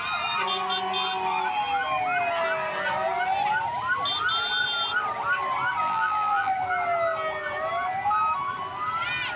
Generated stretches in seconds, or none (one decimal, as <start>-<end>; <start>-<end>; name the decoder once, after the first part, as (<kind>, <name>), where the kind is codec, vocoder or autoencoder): 5.8-6.5 (vocoder, BigVGAN v2)